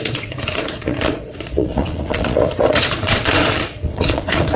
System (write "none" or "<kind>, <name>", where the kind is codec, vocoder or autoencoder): vocoder, Vocos